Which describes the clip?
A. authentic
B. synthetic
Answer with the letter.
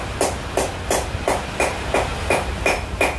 A